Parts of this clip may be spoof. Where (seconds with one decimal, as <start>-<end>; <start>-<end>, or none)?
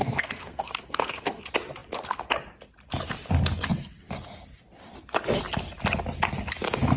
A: 0.0-1.4